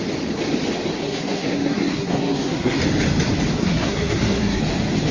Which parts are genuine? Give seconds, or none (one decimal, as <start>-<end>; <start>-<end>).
0.0-1.0; 2.8-3.6; 4.6-5.1